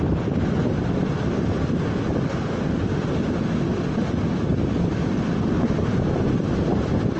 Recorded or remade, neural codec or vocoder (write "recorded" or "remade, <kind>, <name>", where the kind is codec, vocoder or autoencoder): recorded